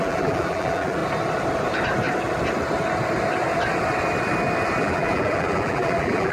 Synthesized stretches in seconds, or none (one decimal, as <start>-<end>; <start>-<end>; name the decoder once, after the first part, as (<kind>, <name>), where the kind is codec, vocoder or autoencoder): 0.0-1.0 (vocoder, BigVGAN v2); 4.8-6.3